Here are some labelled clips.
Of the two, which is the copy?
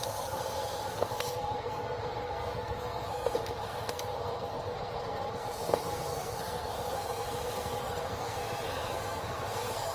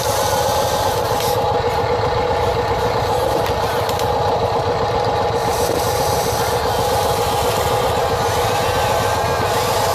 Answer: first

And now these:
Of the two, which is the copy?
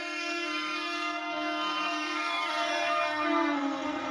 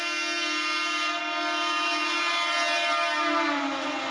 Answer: first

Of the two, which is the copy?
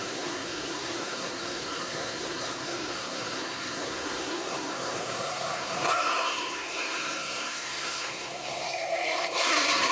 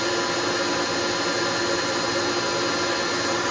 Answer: first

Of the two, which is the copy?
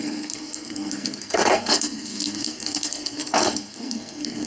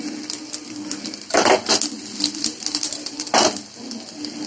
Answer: first